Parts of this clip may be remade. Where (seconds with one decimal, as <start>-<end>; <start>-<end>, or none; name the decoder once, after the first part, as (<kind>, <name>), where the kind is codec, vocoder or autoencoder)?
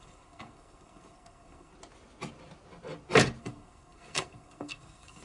0.0-1.7 (codec, SNAC); 3.4-5.2